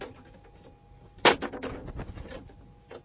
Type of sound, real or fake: real